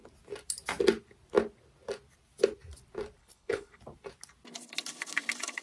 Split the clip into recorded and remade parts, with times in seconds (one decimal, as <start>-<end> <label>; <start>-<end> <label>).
0.0-3.2 recorded; 3.2-3.8 remade; 3.8-5.6 recorded